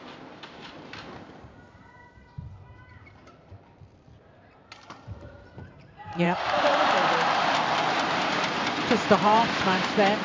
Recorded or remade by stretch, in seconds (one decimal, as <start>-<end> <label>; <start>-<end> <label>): 0.0-10.2 remade